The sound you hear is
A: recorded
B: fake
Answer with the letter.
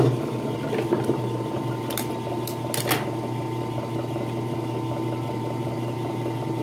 A